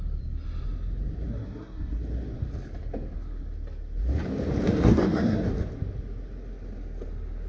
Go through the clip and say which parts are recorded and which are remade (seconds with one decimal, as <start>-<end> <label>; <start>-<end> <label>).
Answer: 0.0-1.3 recorded; 1.3-2.0 remade; 2.0-4.7 recorded; 4.7-5.4 remade; 5.4-7.5 recorded